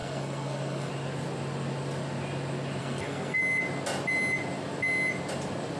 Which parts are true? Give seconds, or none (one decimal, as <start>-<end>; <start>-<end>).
0.9-2.8; 3.4-5.8